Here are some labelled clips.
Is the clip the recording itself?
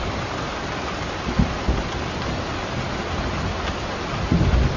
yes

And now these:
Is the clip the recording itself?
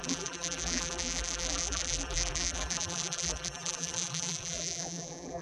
no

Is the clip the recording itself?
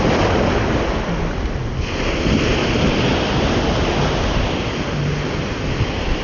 yes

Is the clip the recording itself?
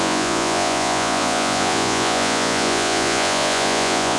no